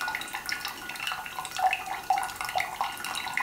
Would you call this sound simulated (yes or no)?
no